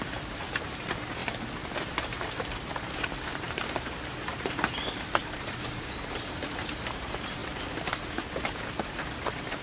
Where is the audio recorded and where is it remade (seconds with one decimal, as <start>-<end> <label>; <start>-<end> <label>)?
0.0-1.2 remade; 1.2-1.9 recorded; 1.9-9.6 remade